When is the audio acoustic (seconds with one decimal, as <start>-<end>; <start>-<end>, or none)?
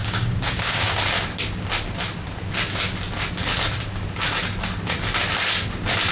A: 1.0-6.1